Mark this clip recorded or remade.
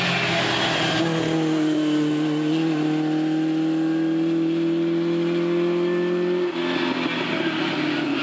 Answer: recorded